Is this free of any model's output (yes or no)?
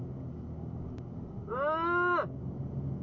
yes